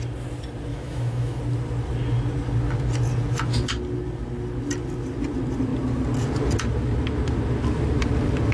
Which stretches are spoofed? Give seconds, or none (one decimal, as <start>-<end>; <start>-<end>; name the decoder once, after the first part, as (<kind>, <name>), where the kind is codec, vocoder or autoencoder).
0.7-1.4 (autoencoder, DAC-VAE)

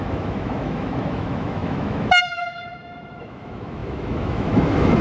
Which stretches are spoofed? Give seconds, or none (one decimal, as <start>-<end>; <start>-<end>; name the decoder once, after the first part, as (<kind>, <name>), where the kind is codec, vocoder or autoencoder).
0.0-5.0 (autoencoder, DAC-VAE)

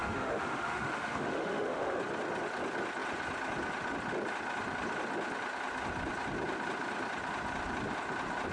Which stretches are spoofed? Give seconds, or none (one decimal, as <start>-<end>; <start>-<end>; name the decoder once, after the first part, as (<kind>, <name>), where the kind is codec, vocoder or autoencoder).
0.0-2.0 (autoencoder, DAC-VAE)

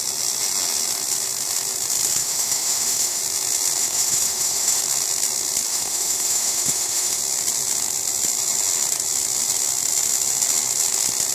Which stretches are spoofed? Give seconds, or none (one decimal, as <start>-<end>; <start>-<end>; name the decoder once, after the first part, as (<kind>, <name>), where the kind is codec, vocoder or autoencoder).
2.2-3.2 (autoencoder, DAC-VAE); 3.8-4.8; 5.7-7.2